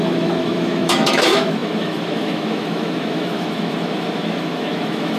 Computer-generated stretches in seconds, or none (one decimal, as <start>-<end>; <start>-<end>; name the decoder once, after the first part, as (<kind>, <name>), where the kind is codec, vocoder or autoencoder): 0.0-5.2 (autoencoder, DAC-VAE)